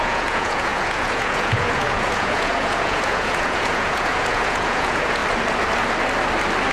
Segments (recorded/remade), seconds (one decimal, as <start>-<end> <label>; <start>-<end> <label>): 0.0-5.2 remade; 5.2-6.7 recorded

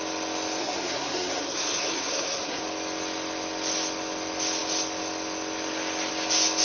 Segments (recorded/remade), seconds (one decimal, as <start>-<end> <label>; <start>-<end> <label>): 0.0-0.6 recorded; 0.6-2.6 remade; 2.6-6.6 recorded

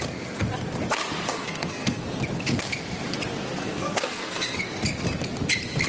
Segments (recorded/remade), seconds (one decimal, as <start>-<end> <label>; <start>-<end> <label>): 0.0-1.3 recorded; 1.3-2.0 remade; 2.0-3.6 recorded; 3.6-4.6 remade; 4.6-5.9 recorded

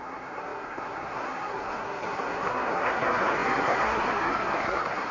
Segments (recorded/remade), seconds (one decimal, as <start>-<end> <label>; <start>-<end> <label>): 0.0-5.1 remade

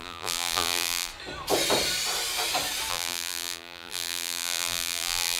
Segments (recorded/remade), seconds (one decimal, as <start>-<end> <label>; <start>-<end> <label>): 0.0-1.1 remade; 1.1-2.9 recorded; 2.9-5.4 remade

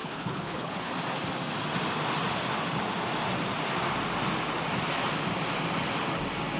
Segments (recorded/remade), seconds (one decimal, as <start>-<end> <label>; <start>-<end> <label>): 0.0-0.9 remade; 0.9-6.6 recorded